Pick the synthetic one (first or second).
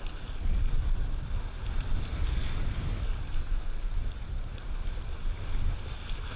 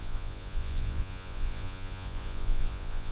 second